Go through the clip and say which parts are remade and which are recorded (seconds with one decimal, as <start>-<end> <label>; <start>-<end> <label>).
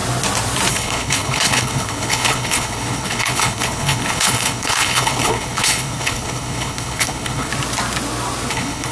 0.0-0.7 recorded; 0.7-7.5 remade; 7.5-8.5 recorded; 8.5-8.9 remade